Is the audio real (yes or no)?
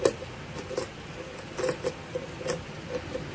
yes